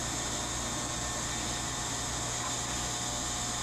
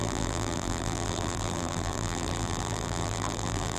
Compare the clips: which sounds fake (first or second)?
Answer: second